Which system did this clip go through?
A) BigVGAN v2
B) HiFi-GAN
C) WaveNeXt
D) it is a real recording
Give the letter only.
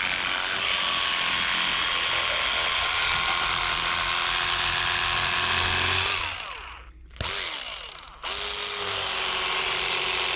D